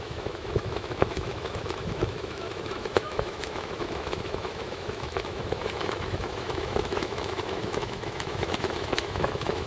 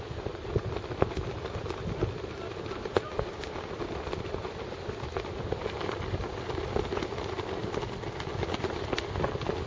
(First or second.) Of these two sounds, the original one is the second